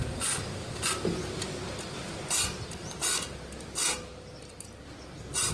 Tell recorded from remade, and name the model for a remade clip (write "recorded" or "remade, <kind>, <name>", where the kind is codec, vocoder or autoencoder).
recorded